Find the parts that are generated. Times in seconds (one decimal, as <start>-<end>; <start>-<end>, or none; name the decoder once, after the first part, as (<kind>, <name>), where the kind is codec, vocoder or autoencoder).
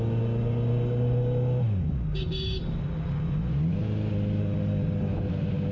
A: 0.0-3.5 (codec, DAC); 4.4-5.1